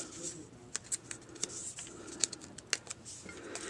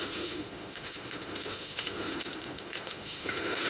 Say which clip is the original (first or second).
first